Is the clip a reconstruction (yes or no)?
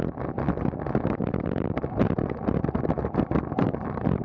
yes